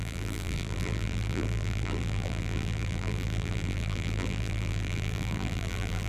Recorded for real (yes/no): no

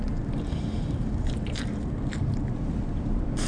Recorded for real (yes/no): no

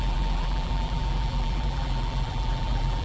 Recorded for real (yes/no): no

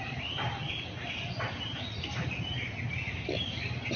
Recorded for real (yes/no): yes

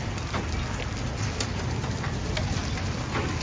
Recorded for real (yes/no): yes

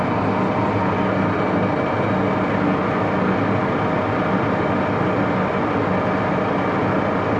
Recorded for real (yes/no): yes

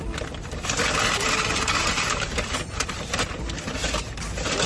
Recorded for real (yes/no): yes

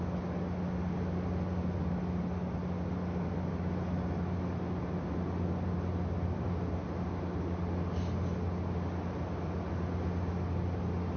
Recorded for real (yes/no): yes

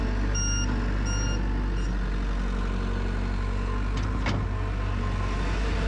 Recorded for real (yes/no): yes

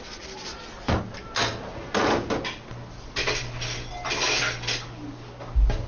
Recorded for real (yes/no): yes